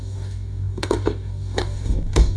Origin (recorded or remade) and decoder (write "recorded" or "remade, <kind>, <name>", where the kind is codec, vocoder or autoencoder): remade, codec, DAC